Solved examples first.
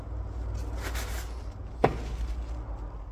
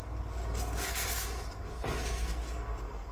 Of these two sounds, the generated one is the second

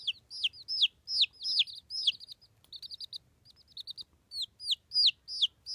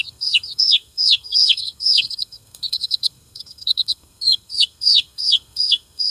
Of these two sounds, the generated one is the second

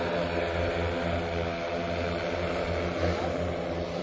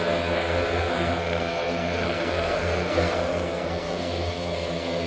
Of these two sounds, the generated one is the second